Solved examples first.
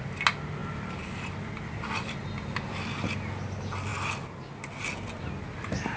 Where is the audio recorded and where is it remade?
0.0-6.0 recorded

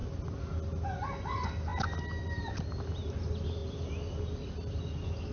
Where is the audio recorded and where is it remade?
0.0-5.3 recorded

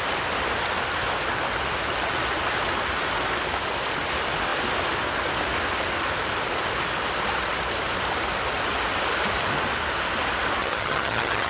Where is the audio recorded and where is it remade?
0.0-10.6 recorded; 10.6-11.5 remade

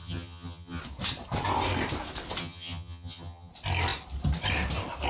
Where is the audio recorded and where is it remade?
0.0-0.8 remade; 0.8-2.4 recorded; 2.4-3.5 remade; 3.5-5.1 recorded

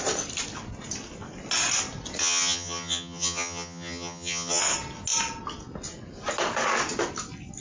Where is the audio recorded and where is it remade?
0.0-2.2 recorded; 2.2-4.6 remade; 4.6-7.6 recorded

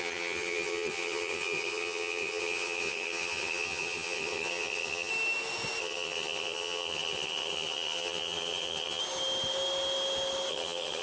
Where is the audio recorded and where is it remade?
0.0-5.1 remade; 5.1-5.8 recorded; 5.8-9.0 remade; 9.0-10.5 recorded; 10.5-11.0 remade

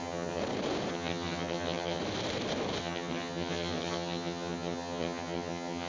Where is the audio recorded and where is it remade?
0.0-0.4 remade; 0.4-0.9 recorded; 0.9-2.0 remade; 2.0-2.8 recorded; 2.8-5.9 remade